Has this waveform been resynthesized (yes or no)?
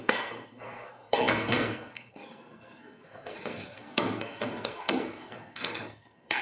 yes